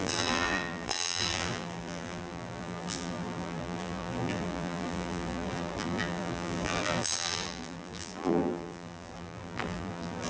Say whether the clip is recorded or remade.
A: remade